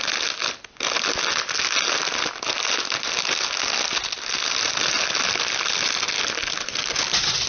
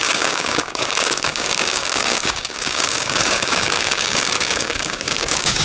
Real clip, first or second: first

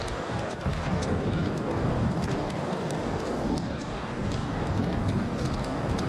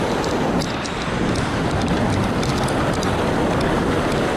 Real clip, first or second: second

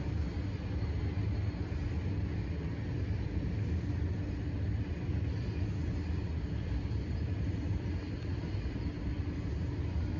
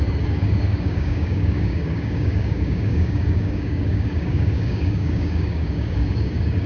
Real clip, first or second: first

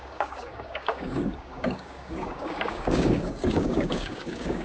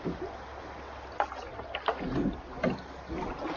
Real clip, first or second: second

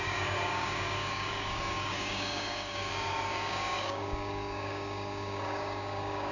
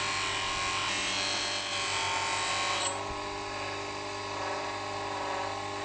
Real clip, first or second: second